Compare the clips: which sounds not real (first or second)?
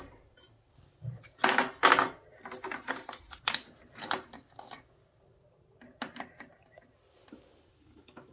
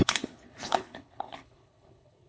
second